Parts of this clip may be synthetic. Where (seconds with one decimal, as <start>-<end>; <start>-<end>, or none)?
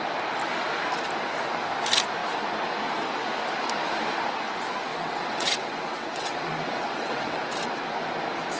4.9-7.4